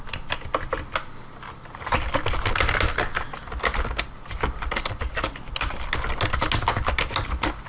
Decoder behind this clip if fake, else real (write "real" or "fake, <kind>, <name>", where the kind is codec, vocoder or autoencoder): real